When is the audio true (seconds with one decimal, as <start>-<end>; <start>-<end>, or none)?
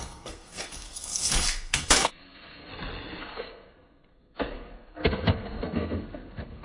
2.7-3.2